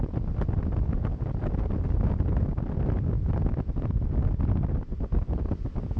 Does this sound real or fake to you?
real